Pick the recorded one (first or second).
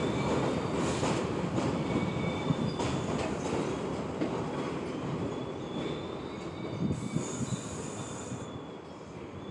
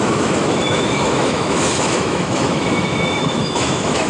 first